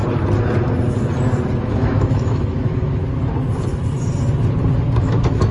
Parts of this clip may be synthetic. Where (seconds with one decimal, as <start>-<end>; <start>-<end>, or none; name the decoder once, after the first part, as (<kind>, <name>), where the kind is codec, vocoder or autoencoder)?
1.6-3.0 (autoencoder, DAC-VAE); 5.0-5.5

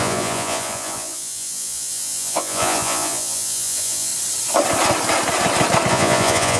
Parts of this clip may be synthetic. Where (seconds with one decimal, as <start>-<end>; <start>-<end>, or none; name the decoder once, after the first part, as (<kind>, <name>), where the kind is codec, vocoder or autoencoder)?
0.0-4.1 (vocoder, Vocos); 5.9-6.6

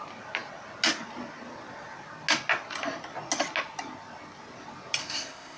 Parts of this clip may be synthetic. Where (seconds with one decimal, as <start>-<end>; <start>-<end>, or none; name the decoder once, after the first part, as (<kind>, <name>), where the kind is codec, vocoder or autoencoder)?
5.0-5.6 (codec, ZipCodec)

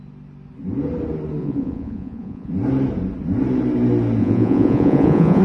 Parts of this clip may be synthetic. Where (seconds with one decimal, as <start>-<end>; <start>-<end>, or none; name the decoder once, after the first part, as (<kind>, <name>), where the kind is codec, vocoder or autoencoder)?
1.4-2.5 (vocoder, Vocos); 4.2-5.4

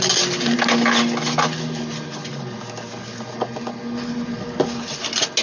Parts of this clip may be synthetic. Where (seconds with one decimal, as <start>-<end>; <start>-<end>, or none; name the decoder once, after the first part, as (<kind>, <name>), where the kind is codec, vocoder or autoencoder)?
none

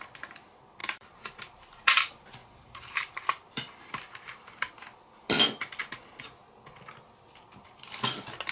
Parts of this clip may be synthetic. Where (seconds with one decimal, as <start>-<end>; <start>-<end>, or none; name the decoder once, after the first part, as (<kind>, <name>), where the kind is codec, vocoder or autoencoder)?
0.8-2.0 (vocoder, BigVGAN v2); 2.4-3.5

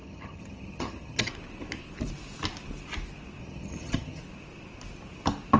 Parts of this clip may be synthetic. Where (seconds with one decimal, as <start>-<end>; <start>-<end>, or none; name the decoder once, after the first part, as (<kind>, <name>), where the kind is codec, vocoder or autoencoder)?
0.0-1.3 (vocoder, HiFi-GAN); 3.4-4.2